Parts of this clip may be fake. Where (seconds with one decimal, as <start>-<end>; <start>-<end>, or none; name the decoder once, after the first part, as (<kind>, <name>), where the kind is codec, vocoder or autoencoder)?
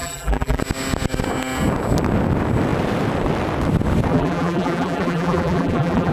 0.0-0.6 (vocoder, BigVGAN v2); 4.1-6.1